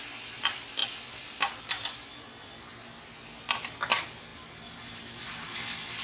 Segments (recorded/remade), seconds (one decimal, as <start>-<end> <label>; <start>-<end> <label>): 0.0-6.0 recorded